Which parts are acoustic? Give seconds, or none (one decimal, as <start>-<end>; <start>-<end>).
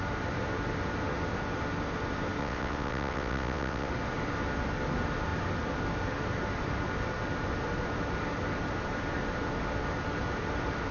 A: 0.0-2.4; 3.9-10.9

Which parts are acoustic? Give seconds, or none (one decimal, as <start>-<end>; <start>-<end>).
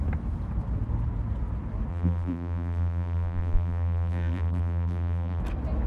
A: 0.0-1.9; 5.4-5.9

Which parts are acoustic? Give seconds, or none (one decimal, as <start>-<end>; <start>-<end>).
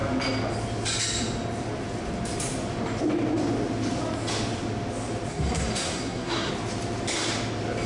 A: 0.0-5.3; 6.5-7.9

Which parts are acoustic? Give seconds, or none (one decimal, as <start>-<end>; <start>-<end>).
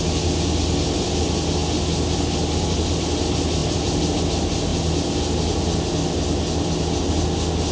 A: 0.0-7.7